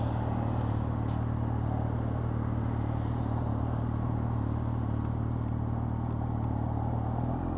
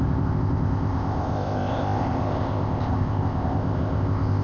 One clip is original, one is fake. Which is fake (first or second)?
second